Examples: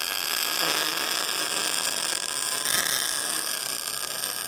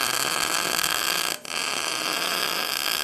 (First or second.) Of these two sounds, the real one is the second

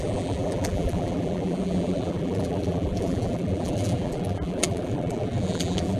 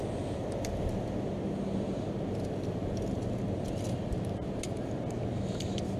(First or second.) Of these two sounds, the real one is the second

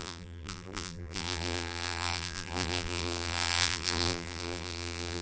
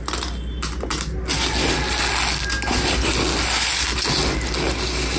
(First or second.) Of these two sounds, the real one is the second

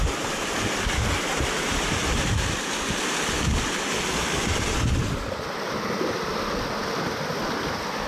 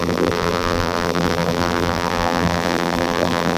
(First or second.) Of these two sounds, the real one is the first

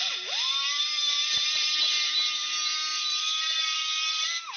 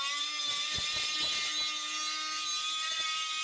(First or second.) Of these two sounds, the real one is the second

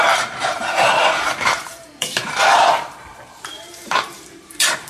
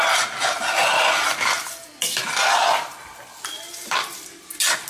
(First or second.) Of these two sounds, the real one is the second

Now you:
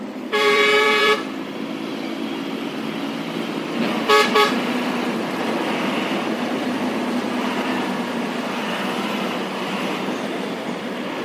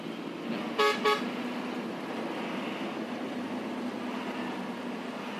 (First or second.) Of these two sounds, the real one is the second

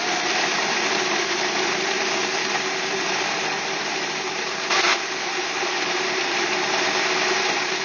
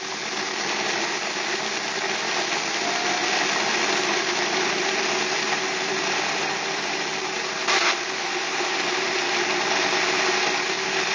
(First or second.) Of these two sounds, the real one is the second